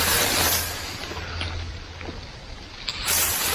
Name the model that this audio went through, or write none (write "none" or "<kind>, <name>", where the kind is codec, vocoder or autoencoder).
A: none